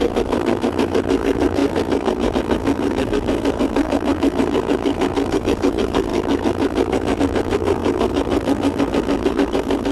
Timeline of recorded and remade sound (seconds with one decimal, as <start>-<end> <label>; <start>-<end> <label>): 0.0-9.9 remade